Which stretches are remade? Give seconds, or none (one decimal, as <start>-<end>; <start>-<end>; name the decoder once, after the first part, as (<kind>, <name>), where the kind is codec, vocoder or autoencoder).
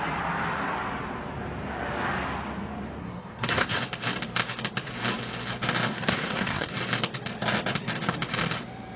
3.0-3.8 (codec, SNAC); 5.9-6.7